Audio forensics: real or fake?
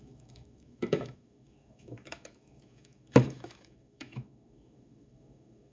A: fake